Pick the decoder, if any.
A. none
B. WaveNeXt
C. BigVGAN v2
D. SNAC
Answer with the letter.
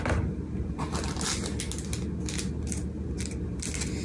A